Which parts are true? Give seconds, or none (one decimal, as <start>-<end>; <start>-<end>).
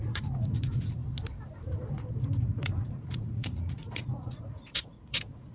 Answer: 1.0-2.4